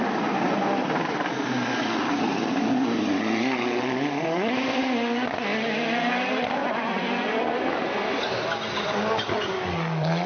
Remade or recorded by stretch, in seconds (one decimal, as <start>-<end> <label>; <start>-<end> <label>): 0.0-6.6 recorded; 6.6-7.3 remade; 7.3-10.3 recorded